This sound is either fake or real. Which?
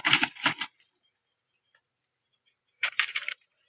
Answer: fake